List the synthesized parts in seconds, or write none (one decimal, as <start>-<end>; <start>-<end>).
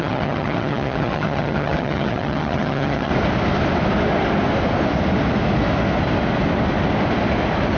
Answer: 0.0-3.1